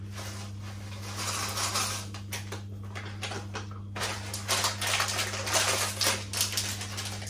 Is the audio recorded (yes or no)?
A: yes